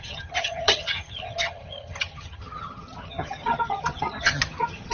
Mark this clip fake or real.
fake